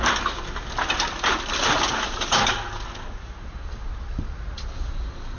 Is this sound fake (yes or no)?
no